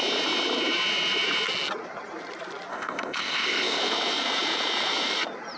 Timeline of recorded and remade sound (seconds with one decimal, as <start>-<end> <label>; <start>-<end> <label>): 0.0-2.7 recorded; 2.7-3.8 remade; 3.8-5.6 recorded